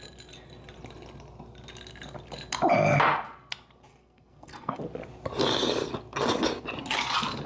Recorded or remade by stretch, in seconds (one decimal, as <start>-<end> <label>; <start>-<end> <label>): 0.0-3.9 recorded; 3.9-4.8 remade; 4.8-7.5 recorded